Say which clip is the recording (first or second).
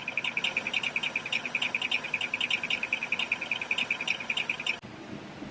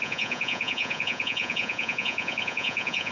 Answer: first